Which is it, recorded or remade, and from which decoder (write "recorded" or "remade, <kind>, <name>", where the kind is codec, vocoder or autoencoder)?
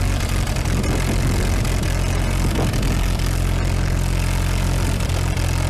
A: recorded